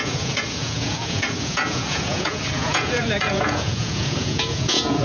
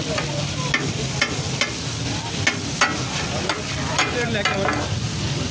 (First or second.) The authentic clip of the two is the second